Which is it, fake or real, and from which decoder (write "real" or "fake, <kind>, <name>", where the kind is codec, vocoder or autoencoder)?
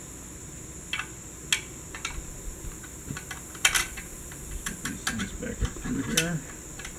real